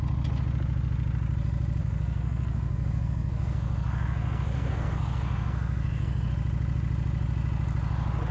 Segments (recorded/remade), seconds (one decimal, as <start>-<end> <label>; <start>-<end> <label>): 0.0-1.8 recorded; 1.8-6.3 remade; 6.3-8.3 recorded